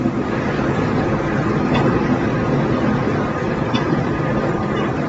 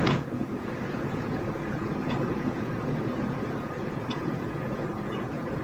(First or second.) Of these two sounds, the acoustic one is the first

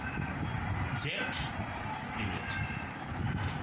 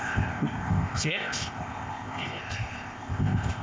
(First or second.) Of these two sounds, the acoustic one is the first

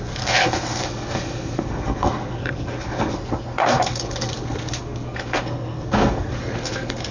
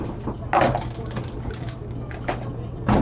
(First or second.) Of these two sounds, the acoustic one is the second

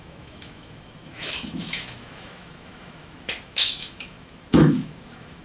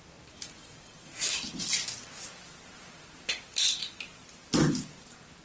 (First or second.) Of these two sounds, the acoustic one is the second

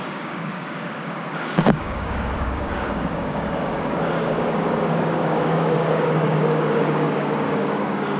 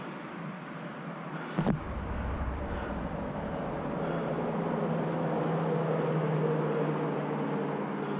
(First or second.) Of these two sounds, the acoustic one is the second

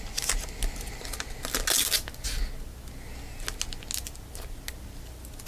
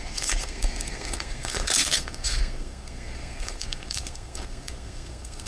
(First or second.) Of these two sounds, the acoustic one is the first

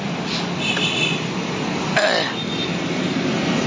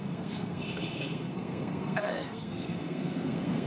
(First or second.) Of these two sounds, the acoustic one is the first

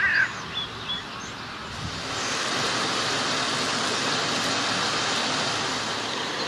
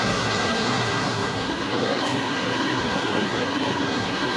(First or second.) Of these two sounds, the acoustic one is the first